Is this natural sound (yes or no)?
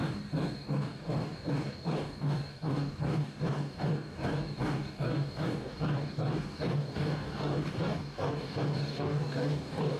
no